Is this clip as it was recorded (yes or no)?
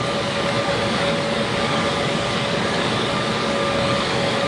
no